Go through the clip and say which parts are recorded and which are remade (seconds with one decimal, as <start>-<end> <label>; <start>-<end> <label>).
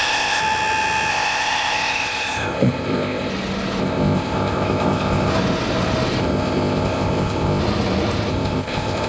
0.0-0.4 remade; 0.4-1.1 recorded; 1.1-3.3 remade; 3.3-3.8 recorded; 3.8-5.3 remade; 5.3-6.2 recorded; 6.2-7.6 remade; 7.6-8.3 recorded; 8.3-9.1 remade